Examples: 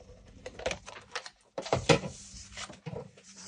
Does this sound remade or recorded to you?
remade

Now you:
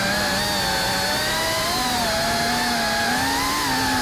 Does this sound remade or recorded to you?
recorded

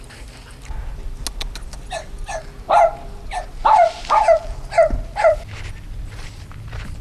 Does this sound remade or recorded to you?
recorded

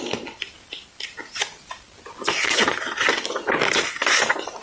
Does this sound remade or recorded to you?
recorded